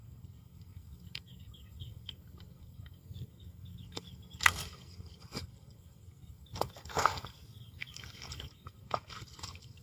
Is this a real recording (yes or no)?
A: no